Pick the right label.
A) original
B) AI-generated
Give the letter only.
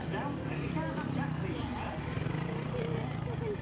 A